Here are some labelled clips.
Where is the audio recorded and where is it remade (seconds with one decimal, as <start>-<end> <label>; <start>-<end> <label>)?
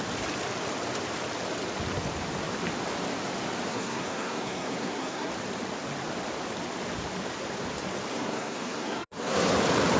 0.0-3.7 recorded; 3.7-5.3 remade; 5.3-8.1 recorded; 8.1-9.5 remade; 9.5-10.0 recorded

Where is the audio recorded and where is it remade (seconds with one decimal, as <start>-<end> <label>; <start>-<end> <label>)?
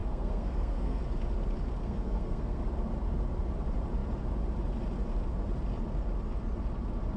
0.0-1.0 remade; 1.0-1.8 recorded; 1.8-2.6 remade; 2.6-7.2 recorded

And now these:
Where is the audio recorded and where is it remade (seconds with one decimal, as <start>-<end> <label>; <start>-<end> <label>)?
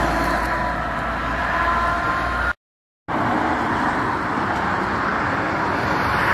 0.0-6.3 recorded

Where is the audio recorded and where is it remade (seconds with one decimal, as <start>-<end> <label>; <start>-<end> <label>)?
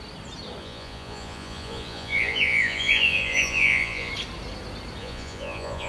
0.0-0.6 recorded; 0.6-4.1 remade; 4.1-5.0 recorded; 5.0-5.9 remade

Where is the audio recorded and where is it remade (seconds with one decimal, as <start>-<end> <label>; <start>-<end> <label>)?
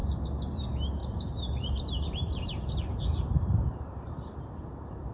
0.0-1.0 recorded; 1.0-4.1 remade; 4.1-5.1 recorded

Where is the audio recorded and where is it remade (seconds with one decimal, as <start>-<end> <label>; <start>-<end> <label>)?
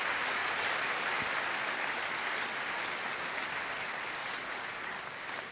0.0-4.2 recorded; 4.2-4.7 remade; 4.7-5.5 recorded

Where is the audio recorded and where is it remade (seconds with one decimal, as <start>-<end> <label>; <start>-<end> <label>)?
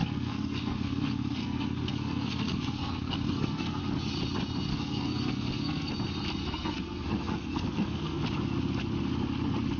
0.0-3.8 remade; 3.8-4.7 recorded; 4.7-5.9 remade; 5.9-6.4 recorded; 6.4-8.2 remade; 8.2-9.8 recorded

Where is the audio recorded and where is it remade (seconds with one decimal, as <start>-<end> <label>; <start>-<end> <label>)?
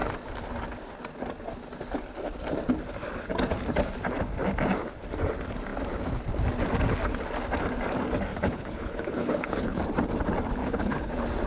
0.0-8.3 recorded; 8.3-9.8 remade; 9.8-10.6 recorded; 10.6-11.1 remade; 11.1-11.5 recorded